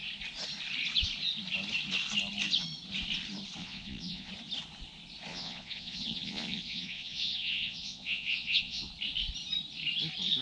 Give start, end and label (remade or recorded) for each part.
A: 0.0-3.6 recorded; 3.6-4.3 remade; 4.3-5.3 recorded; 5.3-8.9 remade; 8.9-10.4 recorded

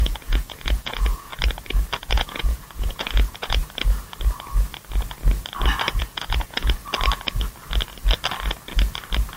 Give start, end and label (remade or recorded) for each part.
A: 0.0-1.3 remade; 1.3-2.1 recorded; 2.1-3.6 remade; 3.6-6.0 recorded; 6.0-6.8 remade; 6.8-9.4 recorded

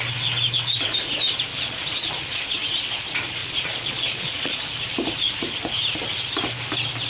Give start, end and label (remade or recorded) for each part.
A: 0.0-1.5 recorded; 1.5-2.4 remade; 2.4-3.4 recorded; 3.4-4.7 remade; 4.7-7.1 recorded

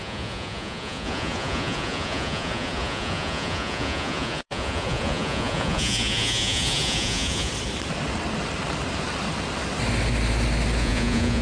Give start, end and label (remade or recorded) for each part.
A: 0.0-7.5 remade; 7.5-10.8 recorded; 10.8-11.4 remade

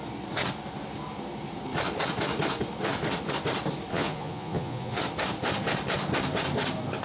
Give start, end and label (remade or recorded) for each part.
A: 0.0-3.9 recorded; 3.9-5.0 remade; 5.0-7.0 recorded

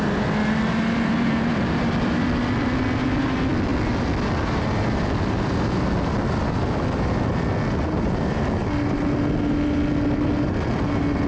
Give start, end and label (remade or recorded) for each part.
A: 0.0-11.3 recorded

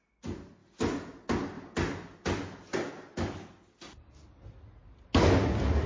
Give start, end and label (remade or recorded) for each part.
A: 0.0-5.9 recorded